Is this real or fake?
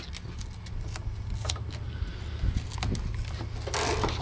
real